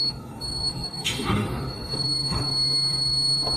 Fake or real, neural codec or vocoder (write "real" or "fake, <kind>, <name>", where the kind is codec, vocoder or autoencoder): fake, autoencoder, DAC-VAE